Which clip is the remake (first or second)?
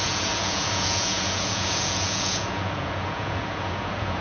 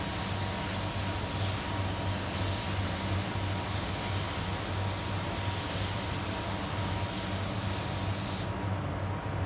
first